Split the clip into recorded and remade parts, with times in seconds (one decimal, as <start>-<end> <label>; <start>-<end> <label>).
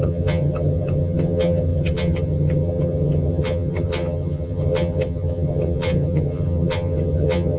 0.0-7.6 remade